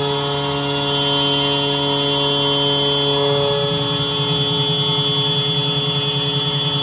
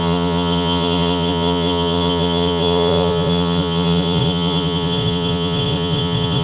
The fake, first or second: second